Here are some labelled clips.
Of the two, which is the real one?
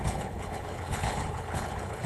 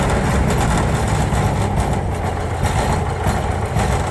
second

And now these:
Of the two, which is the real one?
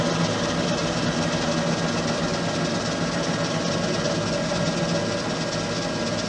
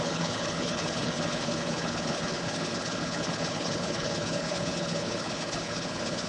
first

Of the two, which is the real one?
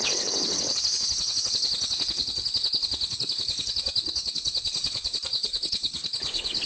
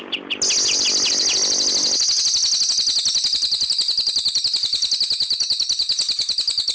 second